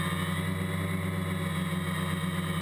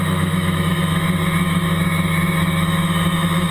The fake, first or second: second